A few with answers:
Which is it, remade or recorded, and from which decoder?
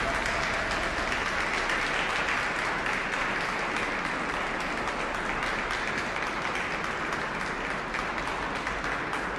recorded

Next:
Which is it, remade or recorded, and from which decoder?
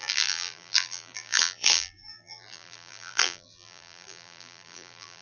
remade, vocoder, BigVGAN v2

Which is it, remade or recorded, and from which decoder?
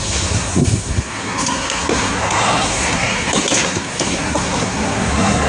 remade, codec, SNAC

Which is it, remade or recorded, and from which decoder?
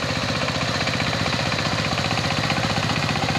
remade, vocoder, BigVGAN v2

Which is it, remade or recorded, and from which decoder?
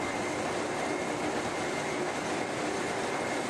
recorded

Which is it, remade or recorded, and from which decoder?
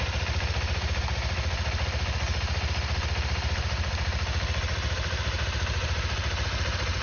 remade, vocoder, BigVGAN v2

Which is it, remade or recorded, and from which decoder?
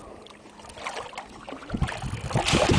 recorded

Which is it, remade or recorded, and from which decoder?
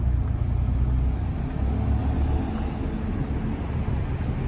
recorded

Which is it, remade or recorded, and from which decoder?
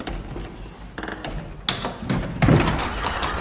recorded